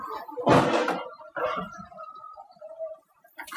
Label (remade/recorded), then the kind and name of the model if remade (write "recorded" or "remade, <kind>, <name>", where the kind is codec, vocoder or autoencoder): recorded